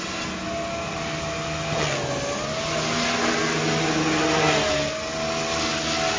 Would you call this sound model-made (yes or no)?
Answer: no